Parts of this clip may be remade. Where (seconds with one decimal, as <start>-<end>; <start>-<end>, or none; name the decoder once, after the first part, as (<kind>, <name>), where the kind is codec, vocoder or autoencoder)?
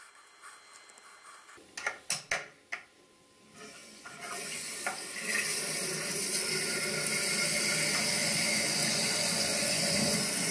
3.8-4.7 (vocoder, Vocos); 8.2-10.5